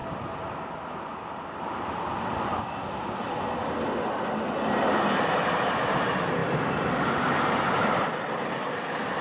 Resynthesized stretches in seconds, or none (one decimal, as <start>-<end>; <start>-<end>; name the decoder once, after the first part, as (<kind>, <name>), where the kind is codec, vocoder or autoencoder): none